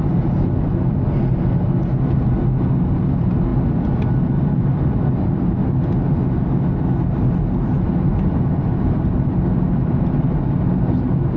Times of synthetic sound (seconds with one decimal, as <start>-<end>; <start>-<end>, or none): 3.5-5.4; 8.1-10.8